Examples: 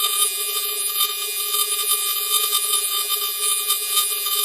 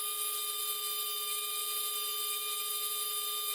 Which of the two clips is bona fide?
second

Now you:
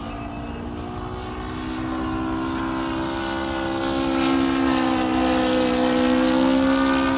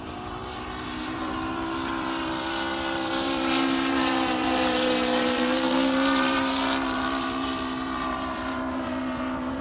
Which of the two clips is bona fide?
first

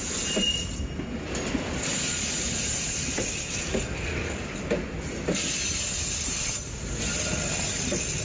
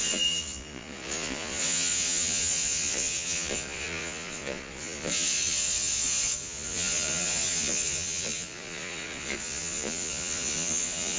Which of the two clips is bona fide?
first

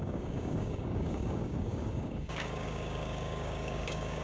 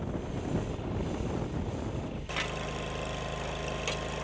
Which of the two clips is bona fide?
second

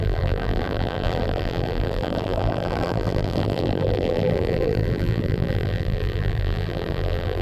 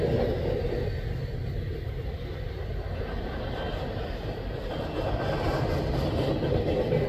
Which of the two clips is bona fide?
second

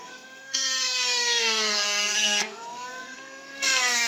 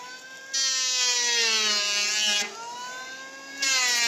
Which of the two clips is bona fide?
second